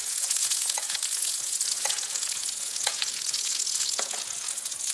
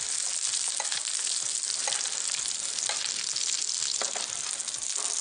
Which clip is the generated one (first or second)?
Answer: first